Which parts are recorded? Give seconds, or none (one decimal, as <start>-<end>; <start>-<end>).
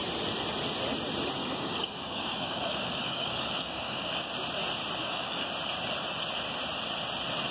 0.0-1.4; 4.3-5.0; 5.5-7.5